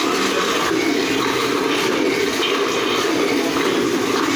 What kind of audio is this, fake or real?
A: real